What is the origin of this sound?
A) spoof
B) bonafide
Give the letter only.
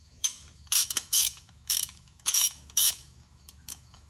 A